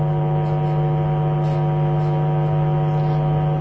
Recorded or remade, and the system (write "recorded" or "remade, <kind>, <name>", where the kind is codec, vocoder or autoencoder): recorded